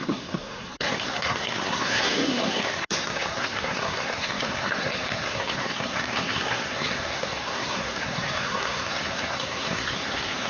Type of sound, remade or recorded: remade